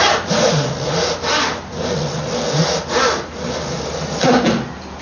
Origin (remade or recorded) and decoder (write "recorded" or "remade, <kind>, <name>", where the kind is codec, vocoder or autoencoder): recorded